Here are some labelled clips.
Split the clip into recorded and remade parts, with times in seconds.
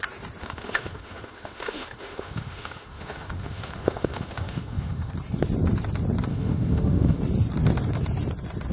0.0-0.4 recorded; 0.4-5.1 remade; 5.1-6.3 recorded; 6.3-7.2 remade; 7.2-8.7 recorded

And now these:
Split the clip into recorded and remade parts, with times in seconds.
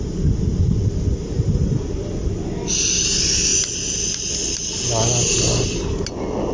0.0-6.5 recorded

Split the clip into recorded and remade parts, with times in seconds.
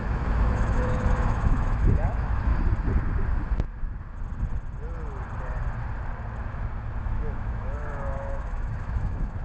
0.0-2.5 remade; 2.5-7.0 recorded; 7.0-9.4 remade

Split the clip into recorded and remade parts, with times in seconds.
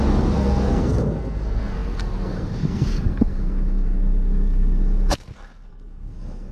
0.0-6.5 remade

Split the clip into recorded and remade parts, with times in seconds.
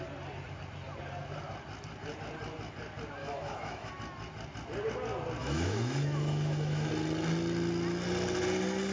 0.0-3.2 recorded; 3.2-3.9 remade; 3.9-5.4 recorded; 5.4-6.9 remade; 6.9-8.9 recorded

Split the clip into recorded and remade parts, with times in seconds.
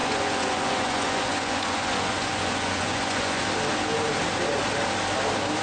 0.0-3.4 remade; 3.4-5.6 recorded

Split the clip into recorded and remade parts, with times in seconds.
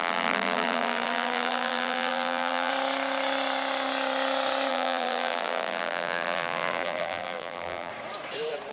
0.0-2.7 remade; 2.7-4.7 recorded; 4.7-7.9 remade; 7.9-8.7 recorded